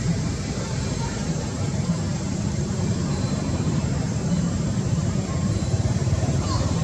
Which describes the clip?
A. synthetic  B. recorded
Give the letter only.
A